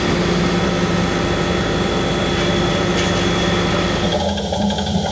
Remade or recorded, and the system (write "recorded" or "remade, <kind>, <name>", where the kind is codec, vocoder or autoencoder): recorded